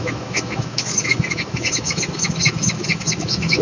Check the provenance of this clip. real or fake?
fake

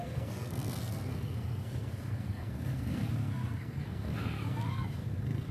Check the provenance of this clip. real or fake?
fake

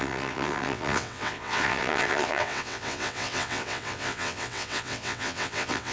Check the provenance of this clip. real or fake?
fake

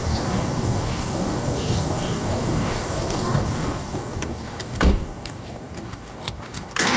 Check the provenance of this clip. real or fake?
fake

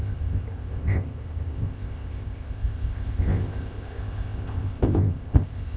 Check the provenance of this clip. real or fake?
fake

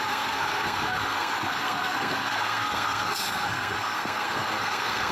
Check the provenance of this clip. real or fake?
fake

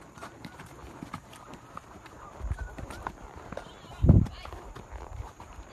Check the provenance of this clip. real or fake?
fake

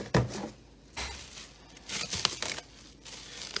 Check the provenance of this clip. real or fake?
real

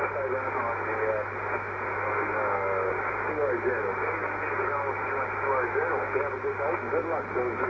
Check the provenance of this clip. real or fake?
real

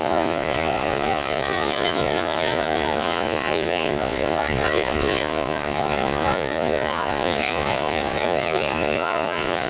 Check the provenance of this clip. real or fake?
fake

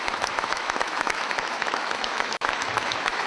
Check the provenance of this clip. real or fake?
fake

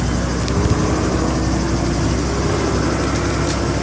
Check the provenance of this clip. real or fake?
real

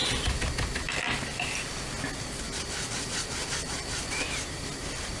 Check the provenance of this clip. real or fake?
real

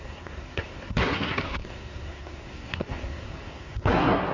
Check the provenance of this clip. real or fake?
fake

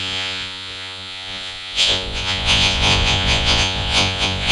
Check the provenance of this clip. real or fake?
fake